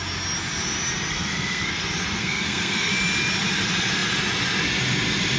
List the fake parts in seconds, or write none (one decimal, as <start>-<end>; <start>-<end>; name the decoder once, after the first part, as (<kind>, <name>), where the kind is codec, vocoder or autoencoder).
1.1-1.8 (codec, SNAC); 2.2-2.9